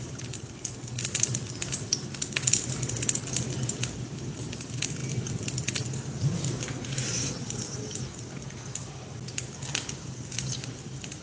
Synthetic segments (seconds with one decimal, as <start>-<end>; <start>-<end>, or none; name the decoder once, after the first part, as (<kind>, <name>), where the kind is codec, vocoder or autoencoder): 5.0-8.0 (vocoder, BigVGAN v2)